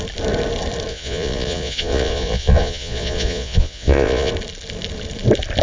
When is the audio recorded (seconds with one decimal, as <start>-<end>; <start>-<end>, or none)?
0.0-0.9; 4.3-5.6